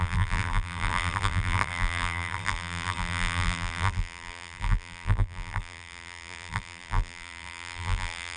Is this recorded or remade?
remade